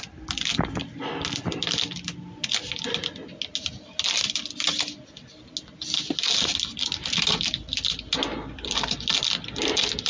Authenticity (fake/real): real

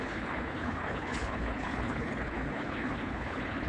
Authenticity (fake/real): fake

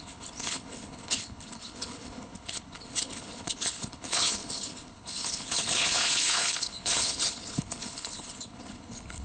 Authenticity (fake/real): fake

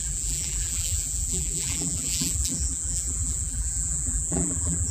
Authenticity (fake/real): fake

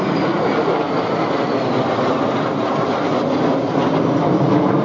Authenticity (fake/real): real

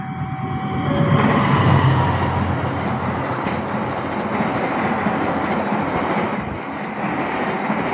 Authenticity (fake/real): real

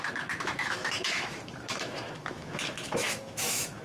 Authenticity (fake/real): fake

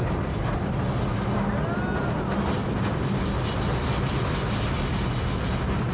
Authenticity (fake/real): real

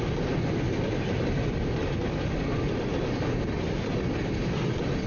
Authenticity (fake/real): real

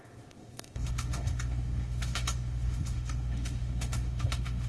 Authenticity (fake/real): fake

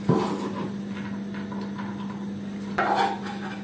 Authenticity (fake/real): real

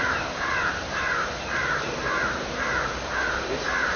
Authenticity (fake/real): fake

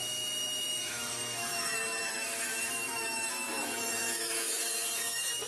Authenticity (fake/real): fake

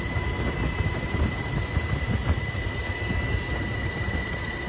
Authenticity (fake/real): real